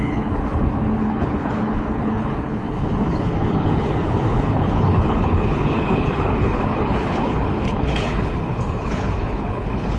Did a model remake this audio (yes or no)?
yes